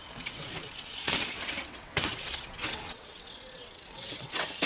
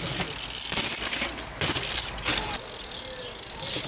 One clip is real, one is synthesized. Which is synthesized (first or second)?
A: first